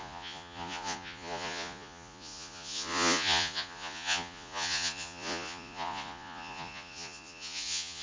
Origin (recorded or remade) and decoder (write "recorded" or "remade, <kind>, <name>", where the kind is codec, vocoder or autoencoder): remade, vocoder, Vocos